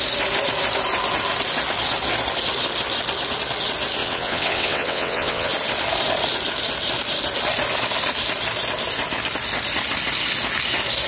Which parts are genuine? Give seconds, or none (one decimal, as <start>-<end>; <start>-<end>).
0.0-4.0; 5.5-11.1